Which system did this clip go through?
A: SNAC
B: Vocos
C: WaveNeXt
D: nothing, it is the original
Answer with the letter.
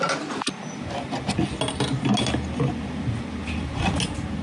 D